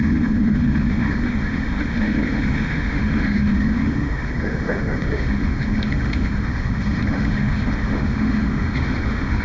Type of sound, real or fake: fake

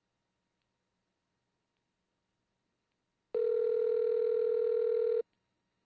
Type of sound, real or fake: real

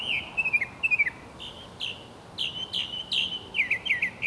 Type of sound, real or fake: real